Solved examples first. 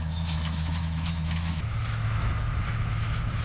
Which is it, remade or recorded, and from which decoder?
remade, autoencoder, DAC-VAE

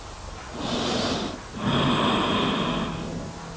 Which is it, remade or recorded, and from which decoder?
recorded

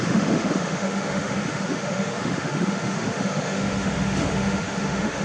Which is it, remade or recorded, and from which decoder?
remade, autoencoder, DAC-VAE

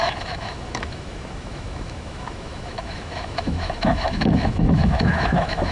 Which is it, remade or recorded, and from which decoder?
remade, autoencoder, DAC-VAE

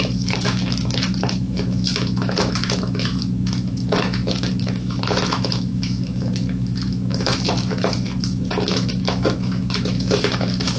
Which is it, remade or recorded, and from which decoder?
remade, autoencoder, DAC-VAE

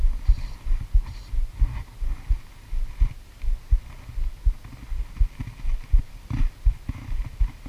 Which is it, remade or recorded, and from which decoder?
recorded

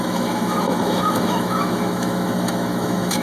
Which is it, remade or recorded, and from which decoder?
remade, autoencoder, DAC-VAE